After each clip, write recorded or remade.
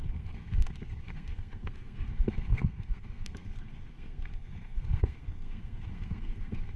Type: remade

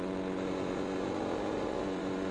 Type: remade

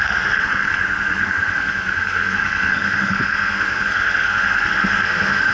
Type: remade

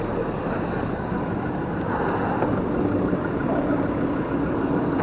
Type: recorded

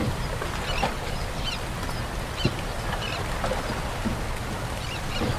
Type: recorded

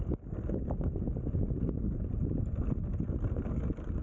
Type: recorded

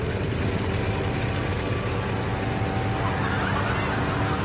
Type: recorded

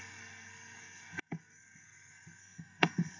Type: remade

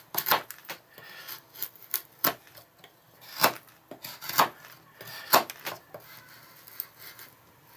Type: recorded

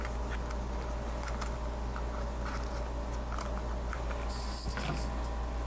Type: recorded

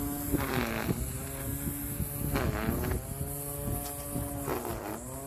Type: recorded